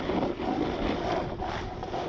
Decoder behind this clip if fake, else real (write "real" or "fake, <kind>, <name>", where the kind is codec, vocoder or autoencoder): real